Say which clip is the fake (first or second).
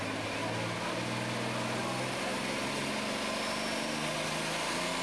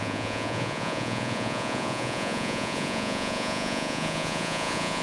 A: second